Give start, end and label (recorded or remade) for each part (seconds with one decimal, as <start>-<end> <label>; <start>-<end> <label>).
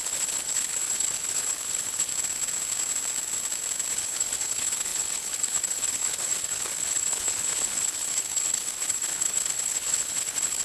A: 0.0-2.1 remade; 2.1-3.9 recorded; 3.9-10.6 remade